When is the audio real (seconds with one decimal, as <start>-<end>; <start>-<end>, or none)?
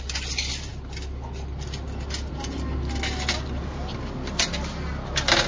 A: 0.0-5.5